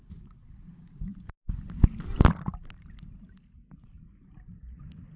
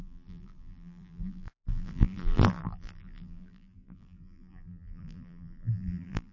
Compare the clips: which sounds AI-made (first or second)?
second